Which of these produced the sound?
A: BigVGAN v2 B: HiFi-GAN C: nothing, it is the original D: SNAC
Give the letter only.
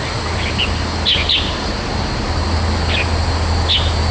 C